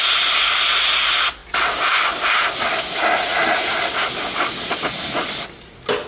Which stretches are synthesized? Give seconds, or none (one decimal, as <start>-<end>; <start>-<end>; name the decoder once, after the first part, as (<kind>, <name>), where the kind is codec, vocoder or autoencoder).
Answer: none